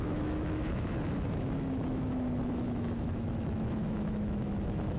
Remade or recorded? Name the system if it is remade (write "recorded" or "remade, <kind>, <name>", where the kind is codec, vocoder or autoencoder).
remade, autoencoder, DAC-VAE